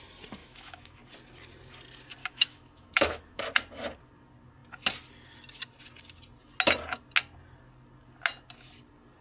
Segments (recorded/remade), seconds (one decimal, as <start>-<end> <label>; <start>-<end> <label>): 0.0-0.4 recorded; 0.4-1.0 remade; 1.0-2.2 recorded; 2.2-3.4 remade; 3.4-9.2 recorded